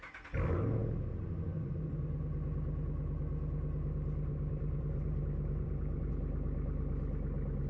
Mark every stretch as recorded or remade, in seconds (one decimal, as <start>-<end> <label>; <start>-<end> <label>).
0.0-4.3 recorded; 4.3-6.1 remade; 6.1-7.7 recorded